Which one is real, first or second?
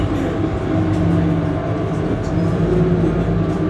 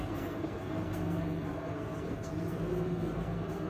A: first